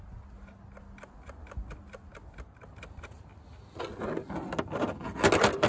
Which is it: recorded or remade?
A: recorded